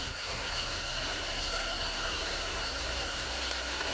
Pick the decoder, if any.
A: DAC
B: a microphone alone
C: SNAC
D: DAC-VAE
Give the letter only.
C